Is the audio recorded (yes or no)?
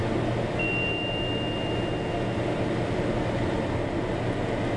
yes